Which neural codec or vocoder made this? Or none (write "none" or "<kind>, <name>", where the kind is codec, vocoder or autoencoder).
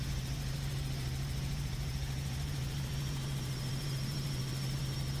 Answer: vocoder, BigVGAN v2